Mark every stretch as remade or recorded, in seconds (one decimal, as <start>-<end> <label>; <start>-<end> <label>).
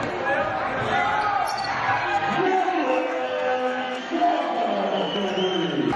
0.0-1.7 recorded; 1.7-5.3 remade; 5.3-6.0 recorded